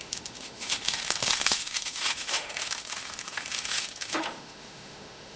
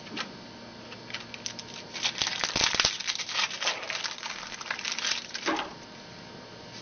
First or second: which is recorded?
second